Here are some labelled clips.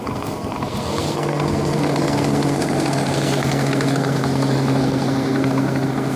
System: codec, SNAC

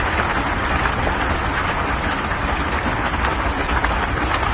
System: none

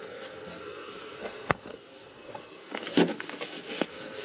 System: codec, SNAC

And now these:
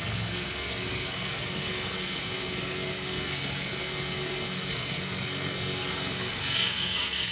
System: codec, SNAC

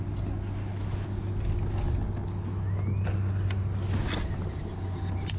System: none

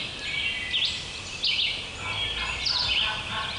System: none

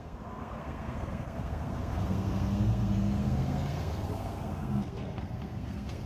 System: codec, SNAC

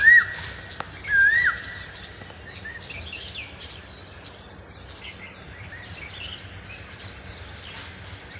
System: none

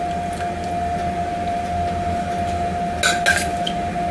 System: none